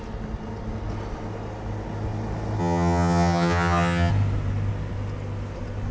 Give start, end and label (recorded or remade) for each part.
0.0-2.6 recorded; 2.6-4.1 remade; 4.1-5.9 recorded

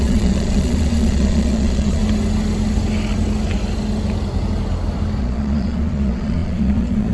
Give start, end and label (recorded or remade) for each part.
0.0-2.0 remade; 2.0-5.2 recorded; 5.2-7.1 remade

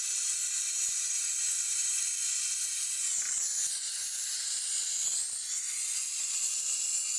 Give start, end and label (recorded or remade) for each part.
0.0-7.2 recorded